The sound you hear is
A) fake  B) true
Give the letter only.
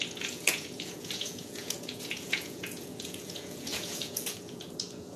A